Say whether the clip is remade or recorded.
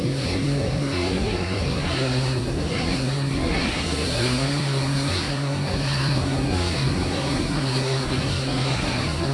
remade